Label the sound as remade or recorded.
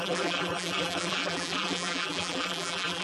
remade